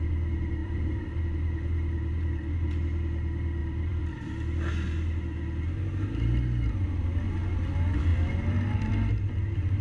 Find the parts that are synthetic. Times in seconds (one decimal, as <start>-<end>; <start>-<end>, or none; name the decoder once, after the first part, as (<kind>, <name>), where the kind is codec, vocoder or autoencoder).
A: 0.6-1.2 (vocoder, BigVGAN v2); 3.6-4.2